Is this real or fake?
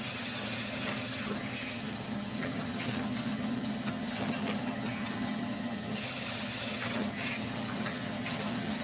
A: fake